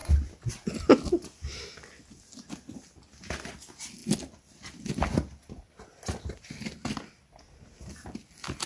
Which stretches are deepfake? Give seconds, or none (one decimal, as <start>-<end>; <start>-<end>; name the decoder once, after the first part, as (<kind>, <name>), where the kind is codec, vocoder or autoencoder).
none